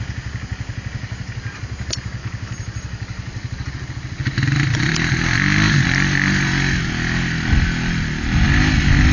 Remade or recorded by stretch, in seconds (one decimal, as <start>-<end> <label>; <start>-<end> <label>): 0.0-2.2 recorded; 2.2-6.8 remade; 6.8-9.1 recorded

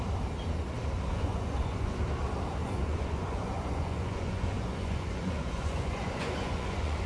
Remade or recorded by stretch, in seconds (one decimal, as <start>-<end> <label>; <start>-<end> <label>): 0.0-1.1 recorded; 1.1-2.0 remade; 2.0-2.6 recorded; 2.6-7.1 remade

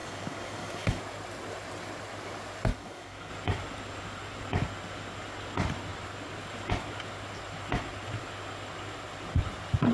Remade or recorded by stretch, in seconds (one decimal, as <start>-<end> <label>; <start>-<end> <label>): 0.0-1.0 remade; 1.0-2.7 recorded; 2.7-3.3 remade; 3.3-9.9 recorded